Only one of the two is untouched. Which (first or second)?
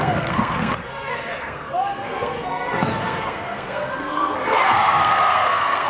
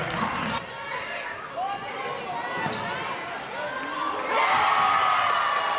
second